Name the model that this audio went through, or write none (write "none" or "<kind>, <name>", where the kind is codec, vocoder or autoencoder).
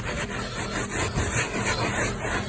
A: none